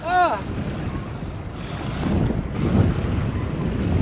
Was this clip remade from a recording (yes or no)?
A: no